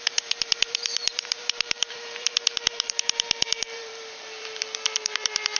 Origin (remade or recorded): remade